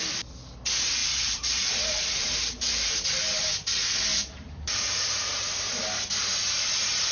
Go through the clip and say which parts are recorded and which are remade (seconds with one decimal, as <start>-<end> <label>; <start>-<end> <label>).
0.0-1.0 recorded; 1.0-2.9 remade; 2.9-4.1 recorded; 4.1-5.5 remade; 5.5-7.1 recorded